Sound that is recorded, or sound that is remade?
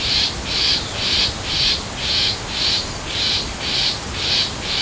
remade